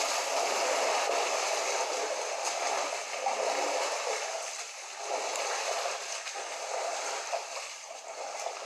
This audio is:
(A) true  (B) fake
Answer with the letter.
A